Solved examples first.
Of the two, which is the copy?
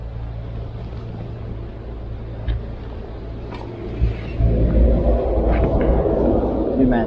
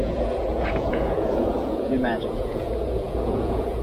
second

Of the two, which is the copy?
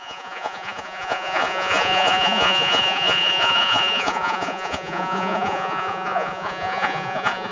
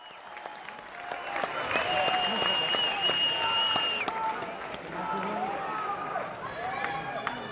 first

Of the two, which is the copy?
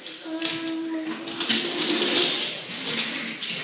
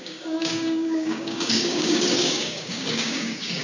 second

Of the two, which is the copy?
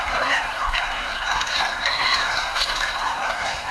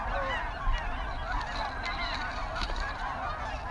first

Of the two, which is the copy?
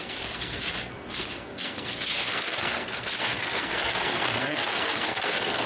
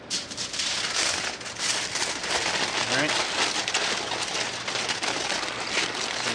first